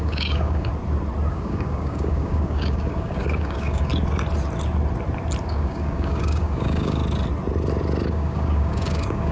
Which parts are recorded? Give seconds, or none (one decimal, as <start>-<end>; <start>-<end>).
0.7-1.3; 3.9-5.4; 7.0-8.1